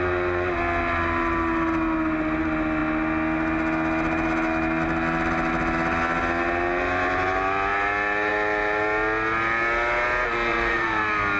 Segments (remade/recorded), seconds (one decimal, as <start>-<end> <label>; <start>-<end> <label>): 0.0-10.5 recorded; 10.5-11.0 remade; 11.0-11.4 recorded